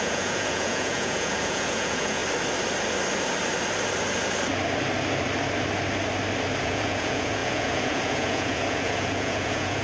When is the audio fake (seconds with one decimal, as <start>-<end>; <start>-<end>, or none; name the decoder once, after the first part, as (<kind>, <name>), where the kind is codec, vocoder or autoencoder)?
0.0-2.2 (vocoder, Vocos); 6.6-9.8